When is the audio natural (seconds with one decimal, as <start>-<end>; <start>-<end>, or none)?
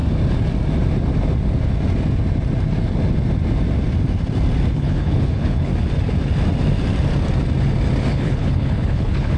0.0-4.7; 5.7-8.1